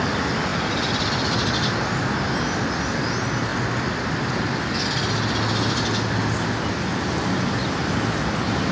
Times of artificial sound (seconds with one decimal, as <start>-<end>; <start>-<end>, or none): none